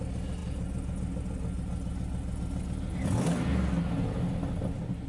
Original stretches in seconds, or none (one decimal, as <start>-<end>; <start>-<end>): 0.0-5.1